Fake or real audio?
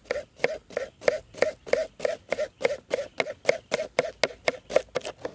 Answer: real